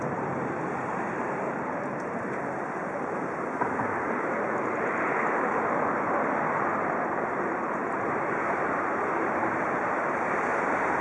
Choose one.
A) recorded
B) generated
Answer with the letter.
B